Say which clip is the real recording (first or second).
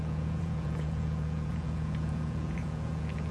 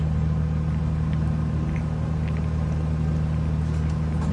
second